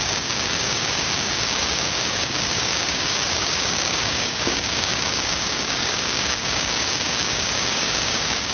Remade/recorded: remade